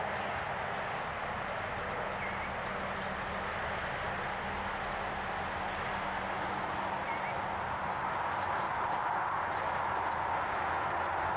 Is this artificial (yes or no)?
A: no